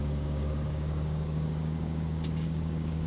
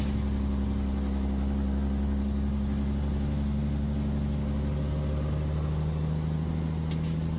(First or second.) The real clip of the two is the second